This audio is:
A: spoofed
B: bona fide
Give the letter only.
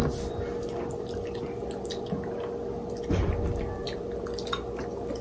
B